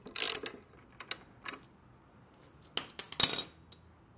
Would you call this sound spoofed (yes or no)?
no